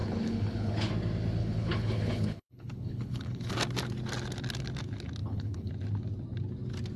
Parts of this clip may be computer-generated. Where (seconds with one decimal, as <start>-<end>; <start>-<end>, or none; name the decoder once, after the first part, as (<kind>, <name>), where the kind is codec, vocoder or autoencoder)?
0.0-0.9 (codec, HILCodec); 1.4-3.5; 5.2-5.7